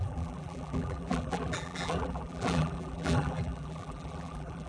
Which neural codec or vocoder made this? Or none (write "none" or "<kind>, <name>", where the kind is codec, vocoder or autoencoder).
vocoder, BigVGAN v2